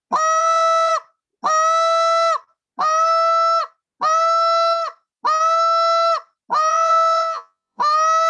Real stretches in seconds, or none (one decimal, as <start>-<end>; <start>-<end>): 0.0-0.4; 0.9-6.7; 7.8-8.3